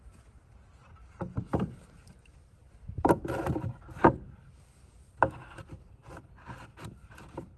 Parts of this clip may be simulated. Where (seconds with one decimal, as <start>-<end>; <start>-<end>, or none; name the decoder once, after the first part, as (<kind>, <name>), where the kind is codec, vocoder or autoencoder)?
none